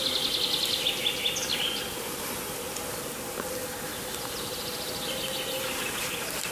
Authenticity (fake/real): real